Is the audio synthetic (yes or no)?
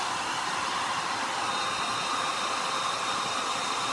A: no